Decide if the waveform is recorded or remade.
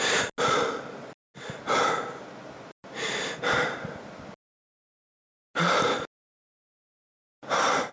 recorded